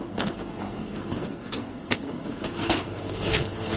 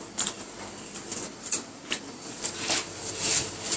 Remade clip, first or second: first